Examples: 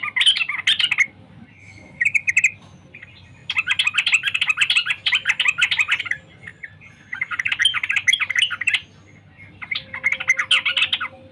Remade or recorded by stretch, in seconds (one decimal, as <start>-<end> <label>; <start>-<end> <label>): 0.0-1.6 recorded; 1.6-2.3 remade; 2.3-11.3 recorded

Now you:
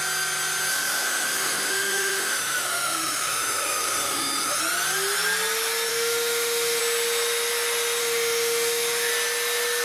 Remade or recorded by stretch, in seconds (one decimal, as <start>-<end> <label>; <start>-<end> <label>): 0.0-0.7 recorded; 0.7-4.6 remade; 4.6-5.9 recorded; 5.9-6.8 remade; 6.8-8.0 recorded; 8.0-9.1 remade; 9.1-9.8 recorded

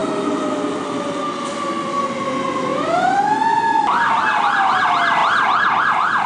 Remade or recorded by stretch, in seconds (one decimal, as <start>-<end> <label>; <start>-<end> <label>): 0.0-6.3 recorded